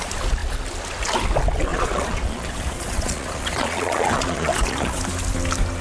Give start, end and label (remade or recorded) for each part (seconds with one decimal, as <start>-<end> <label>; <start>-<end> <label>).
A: 0.0-1.7 recorded; 1.7-5.0 remade; 5.0-5.8 recorded